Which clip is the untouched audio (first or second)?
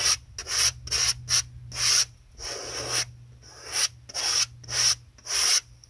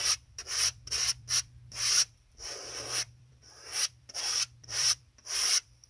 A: first